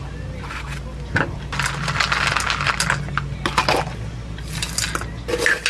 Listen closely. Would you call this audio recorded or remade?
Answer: recorded